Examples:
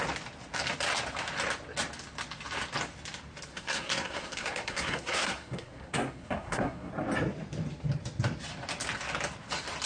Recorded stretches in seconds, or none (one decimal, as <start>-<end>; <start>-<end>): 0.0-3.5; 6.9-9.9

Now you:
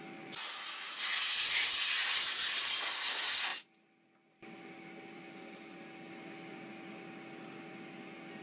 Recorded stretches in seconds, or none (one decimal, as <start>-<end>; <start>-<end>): 0.0-3.5; 6.1-8.4

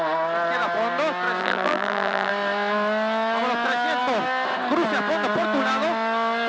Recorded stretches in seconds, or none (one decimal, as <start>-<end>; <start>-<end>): 0.0-1.4; 2.3-6.5

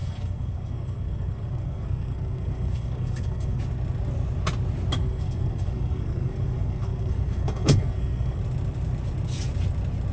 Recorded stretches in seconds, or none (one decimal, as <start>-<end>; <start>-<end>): 3.6-5.0; 8.4-10.1